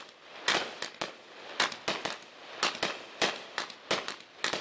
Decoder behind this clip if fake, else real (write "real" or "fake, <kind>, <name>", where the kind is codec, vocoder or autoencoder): real